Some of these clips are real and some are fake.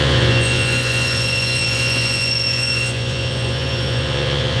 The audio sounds fake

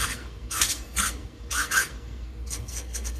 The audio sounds fake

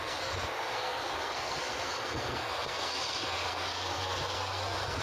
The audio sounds fake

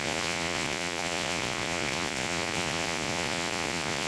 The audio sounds fake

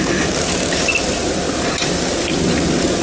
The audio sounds real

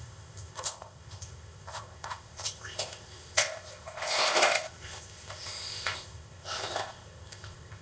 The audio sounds fake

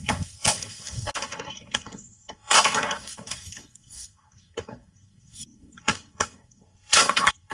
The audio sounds fake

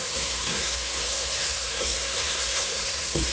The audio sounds fake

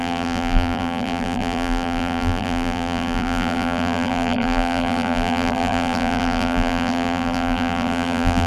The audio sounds fake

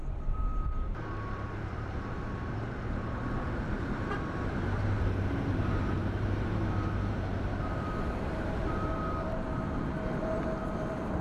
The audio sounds fake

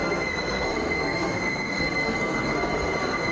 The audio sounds fake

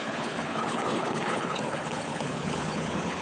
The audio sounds fake